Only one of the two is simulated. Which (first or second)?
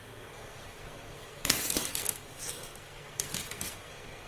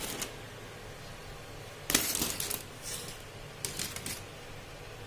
first